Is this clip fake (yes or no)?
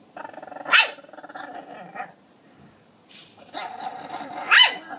yes